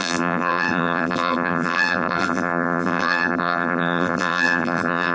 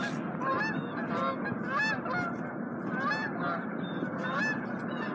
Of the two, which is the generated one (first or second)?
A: first